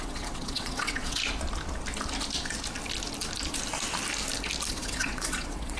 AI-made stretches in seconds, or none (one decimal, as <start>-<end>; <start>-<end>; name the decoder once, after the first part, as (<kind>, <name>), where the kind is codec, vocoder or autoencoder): 0.0-1.2 (vocoder, WaveNeXt); 4.7-5.8